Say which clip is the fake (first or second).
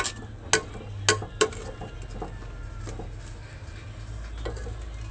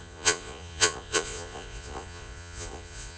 second